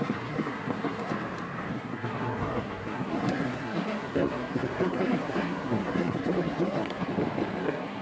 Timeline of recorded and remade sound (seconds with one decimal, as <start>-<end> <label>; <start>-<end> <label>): 0.0-1.1 remade; 1.1-1.7 recorded; 1.7-7.1 remade; 7.1-7.6 recorded; 7.6-8.0 remade